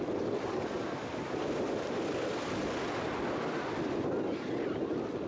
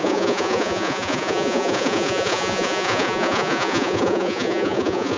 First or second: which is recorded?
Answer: first